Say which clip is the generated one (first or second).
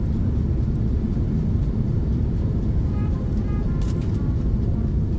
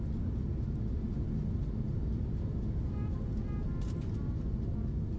first